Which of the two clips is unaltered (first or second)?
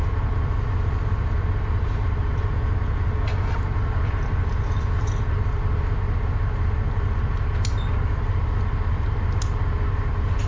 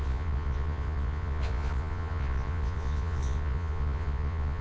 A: first